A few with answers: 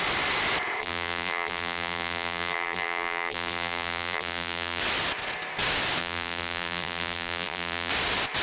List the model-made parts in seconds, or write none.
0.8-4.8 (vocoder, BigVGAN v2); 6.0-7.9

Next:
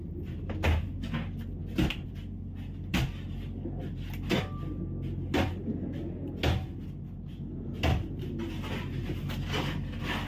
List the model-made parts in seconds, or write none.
none

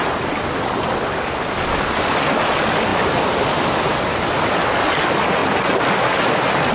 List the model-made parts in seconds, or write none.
none